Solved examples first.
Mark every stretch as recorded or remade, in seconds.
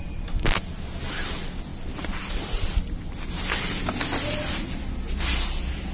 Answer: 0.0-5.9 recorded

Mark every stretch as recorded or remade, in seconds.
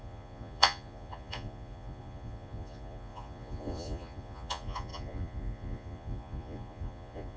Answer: 0.0-7.4 remade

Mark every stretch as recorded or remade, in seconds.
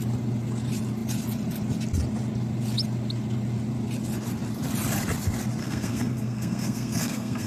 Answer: 0.0-5.6 recorded; 5.6-7.5 remade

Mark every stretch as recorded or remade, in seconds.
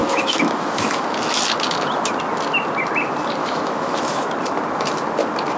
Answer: 0.0-1.0 remade; 1.0-3.4 recorded; 3.4-4.3 remade; 4.3-5.6 recorded